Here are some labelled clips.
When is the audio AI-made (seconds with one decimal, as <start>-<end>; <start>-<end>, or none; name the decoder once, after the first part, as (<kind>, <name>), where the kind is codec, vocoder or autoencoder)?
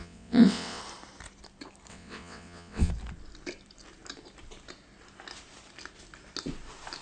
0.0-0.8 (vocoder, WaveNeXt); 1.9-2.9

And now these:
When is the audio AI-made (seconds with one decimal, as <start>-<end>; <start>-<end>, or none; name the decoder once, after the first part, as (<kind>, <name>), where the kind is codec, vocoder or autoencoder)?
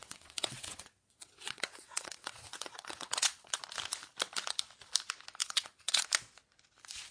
0.0-3.6 (vocoder, WaveNeXt); 5.4-6.0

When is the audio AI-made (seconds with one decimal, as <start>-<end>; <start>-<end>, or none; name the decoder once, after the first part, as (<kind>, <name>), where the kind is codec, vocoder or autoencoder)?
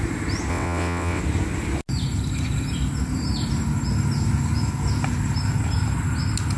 0.5-1.2 (vocoder, WaveNeXt)